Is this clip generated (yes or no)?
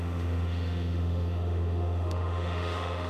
yes